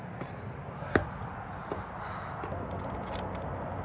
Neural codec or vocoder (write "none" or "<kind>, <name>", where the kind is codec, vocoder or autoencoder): none